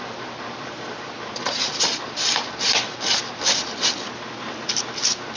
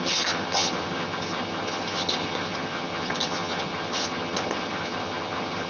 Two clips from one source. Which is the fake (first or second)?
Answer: second